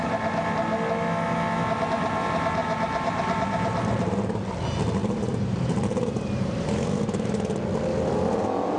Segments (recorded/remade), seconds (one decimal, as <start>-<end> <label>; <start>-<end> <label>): 0.0-2.6 recorded; 2.6-4.1 remade; 4.1-5.0 recorded; 5.0-7.3 remade; 7.3-8.8 recorded